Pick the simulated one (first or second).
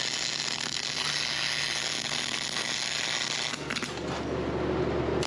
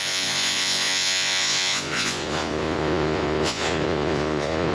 second